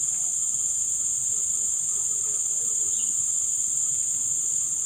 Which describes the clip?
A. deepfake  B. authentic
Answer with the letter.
A